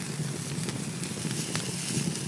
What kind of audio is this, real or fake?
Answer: real